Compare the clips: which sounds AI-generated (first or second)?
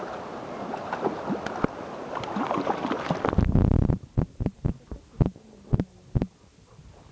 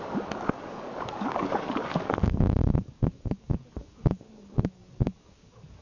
second